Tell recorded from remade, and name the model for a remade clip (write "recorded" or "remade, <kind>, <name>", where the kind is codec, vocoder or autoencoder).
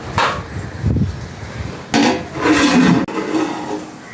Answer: recorded